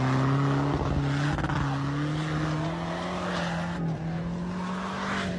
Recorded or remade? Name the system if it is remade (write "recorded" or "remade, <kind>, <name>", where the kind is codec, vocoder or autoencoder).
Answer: recorded